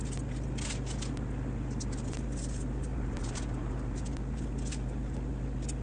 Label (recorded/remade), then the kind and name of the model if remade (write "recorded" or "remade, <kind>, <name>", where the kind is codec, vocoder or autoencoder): recorded